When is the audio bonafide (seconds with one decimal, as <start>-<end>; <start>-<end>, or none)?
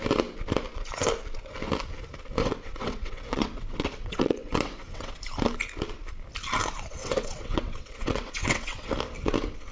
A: 0.0-2.4; 5.2-7.0; 8.9-9.7